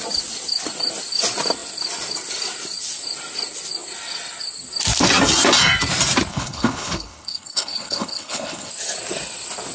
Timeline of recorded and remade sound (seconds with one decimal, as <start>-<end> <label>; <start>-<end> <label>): 0.0-6.3 recorded; 6.3-8.7 remade; 8.7-9.7 recorded